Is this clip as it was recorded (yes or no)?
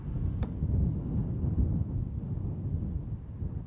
yes